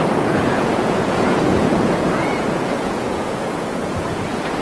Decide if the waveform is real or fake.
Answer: fake